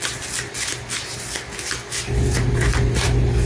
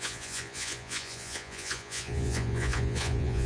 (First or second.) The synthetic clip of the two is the second